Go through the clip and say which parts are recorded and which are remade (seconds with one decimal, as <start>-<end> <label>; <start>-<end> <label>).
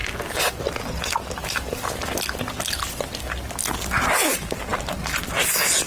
0.0-5.9 recorded